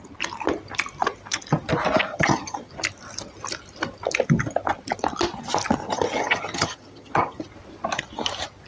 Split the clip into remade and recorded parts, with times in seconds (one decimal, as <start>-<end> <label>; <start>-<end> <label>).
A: 0.0-2.1 recorded; 2.1-2.7 remade; 2.7-5.8 recorded; 5.8-7.4 remade; 7.4-8.7 recorded